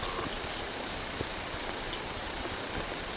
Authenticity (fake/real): fake